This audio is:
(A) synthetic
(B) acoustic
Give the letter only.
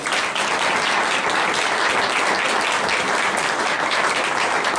B